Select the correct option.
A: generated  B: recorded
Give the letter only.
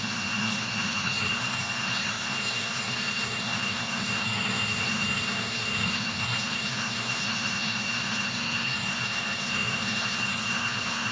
A